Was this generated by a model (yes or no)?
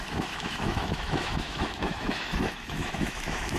yes